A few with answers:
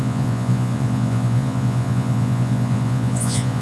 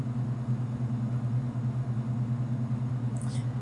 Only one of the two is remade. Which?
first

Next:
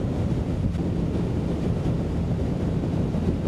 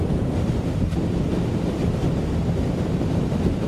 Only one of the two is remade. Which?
second